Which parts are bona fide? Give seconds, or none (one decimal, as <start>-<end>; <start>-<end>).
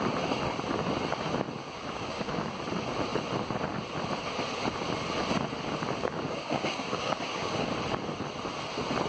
0.0-1.6; 2.6-6.0; 7.7-9.1